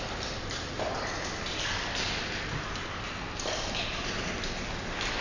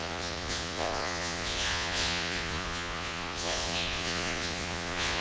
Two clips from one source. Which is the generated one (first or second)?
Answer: second